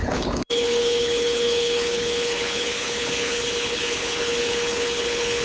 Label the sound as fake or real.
fake